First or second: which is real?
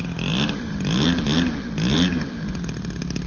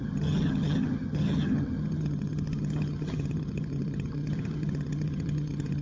first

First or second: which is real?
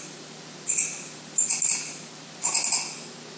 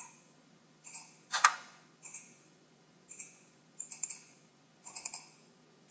first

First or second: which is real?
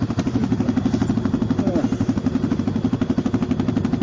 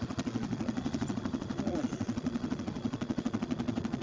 first